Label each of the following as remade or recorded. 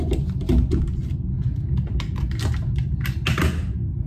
recorded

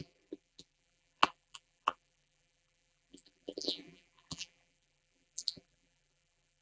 remade